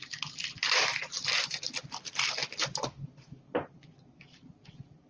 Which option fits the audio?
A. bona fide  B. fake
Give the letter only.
A